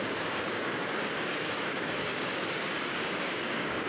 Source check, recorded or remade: remade